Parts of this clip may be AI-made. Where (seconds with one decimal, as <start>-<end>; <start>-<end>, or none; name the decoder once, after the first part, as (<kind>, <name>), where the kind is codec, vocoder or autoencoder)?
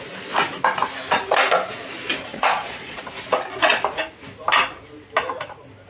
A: 2.3-3.0 (vocoder, Vocos)